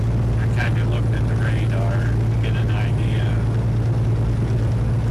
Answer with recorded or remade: recorded